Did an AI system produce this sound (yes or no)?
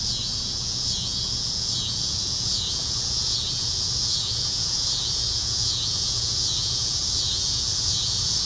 yes